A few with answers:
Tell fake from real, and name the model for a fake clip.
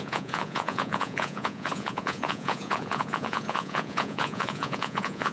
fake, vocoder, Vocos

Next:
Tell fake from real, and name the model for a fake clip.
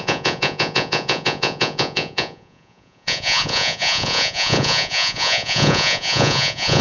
fake, vocoder, Vocos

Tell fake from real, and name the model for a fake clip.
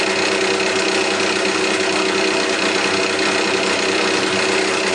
real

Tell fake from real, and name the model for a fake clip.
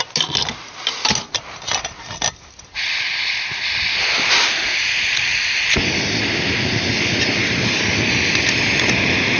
real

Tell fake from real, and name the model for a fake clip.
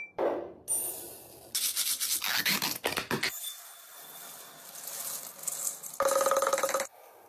real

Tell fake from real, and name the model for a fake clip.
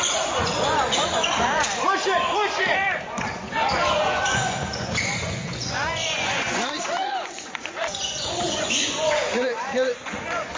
fake, vocoder, Vocos